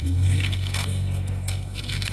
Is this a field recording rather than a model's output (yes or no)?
no